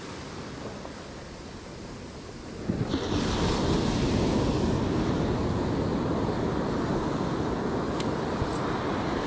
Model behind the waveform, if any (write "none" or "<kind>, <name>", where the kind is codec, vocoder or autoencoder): none